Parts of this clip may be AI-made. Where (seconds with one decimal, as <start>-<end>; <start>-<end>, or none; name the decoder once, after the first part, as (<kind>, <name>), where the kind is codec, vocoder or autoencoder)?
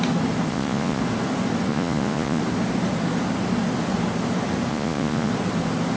0.5-1.0 (vocoder, Vocos); 1.7-2.4; 4.7-5.3